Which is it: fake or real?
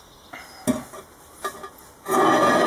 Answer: real